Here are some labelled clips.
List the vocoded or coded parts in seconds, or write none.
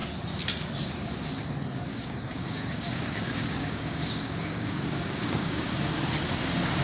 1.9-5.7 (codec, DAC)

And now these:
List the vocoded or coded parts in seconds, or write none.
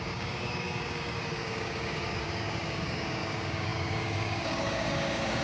0.0-5.4 (codec, DAC)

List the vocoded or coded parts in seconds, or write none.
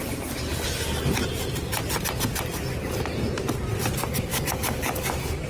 4.3-5.0 (codec, DAC)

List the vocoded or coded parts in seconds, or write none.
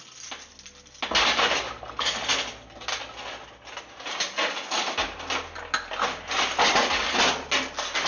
none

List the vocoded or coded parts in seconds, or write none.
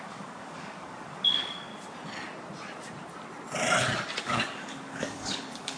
0.0-1.7 (codec, DAC); 4.2-5.8